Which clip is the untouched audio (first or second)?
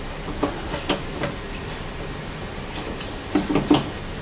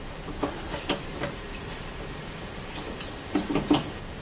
first